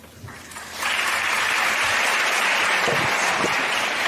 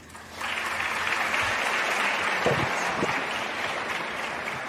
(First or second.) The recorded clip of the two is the second